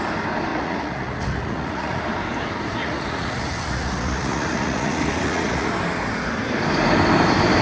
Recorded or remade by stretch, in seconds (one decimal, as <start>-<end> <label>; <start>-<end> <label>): 0.0-0.5 recorded; 0.5-2.0 remade; 2.0-2.8 recorded; 2.8-5.7 remade; 5.7-7.6 recorded